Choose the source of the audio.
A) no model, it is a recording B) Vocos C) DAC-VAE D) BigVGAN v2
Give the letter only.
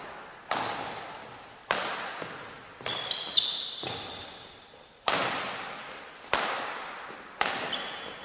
D